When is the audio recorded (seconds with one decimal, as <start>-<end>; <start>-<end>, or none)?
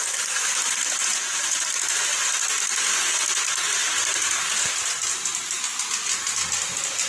0.0-1.0; 1.6-7.1